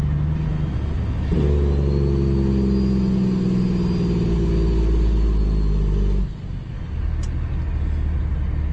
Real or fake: real